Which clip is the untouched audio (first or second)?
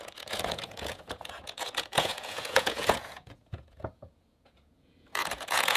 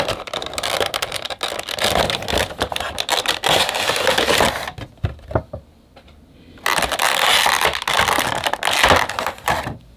second